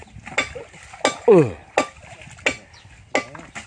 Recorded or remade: recorded